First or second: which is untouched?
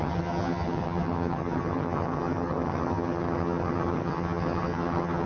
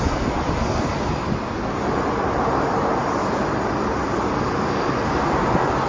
second